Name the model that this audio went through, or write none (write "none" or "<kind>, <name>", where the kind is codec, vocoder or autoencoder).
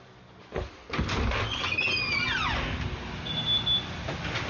none